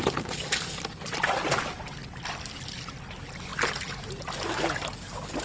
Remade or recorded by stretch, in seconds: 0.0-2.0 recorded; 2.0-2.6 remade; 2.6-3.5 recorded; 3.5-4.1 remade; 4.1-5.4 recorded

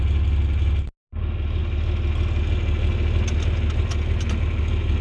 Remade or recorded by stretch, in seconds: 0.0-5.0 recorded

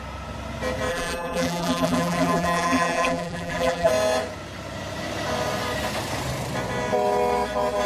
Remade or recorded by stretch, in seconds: 0.0-0.9 recorded; 0.9-3.9 remade; 3.9-7.9 recorded